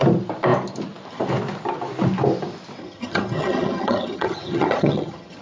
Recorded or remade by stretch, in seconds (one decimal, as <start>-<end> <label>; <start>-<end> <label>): 0.0-2.8 recorded; 2.8-5.4 remade